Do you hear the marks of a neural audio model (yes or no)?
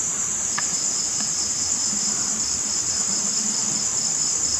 no